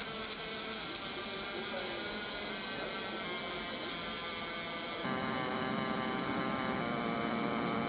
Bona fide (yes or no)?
yes